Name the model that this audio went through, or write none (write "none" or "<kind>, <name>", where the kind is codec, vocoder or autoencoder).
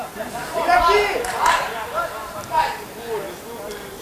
none